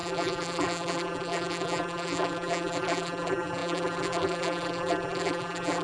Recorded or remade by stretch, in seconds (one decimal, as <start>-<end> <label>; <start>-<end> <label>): 0.0-5.8 remade